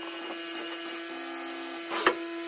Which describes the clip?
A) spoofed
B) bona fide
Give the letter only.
B